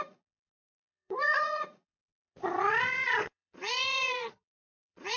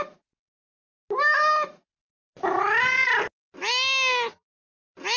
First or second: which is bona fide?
second